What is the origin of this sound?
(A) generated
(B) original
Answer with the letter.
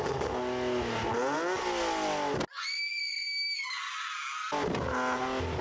B